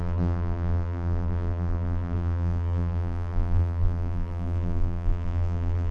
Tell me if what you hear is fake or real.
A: fake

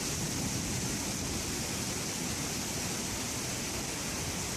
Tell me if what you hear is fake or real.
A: real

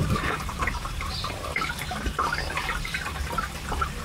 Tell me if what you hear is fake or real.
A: fake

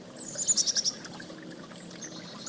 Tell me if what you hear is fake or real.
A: real